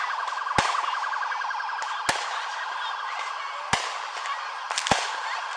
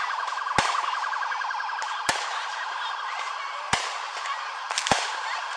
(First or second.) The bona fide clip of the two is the first